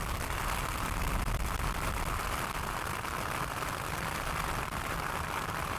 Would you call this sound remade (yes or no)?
no